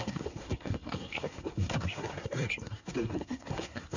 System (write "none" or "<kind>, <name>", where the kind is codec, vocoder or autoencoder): codec, SNAC